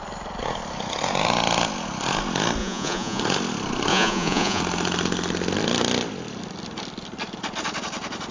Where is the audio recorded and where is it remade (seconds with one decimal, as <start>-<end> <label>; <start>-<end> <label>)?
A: 0.0-2.6 recorded; 2.6-3.2 remade; 3.2-3.9 recorded; 3.9-4.6 remade; 4.6-8.3 recorded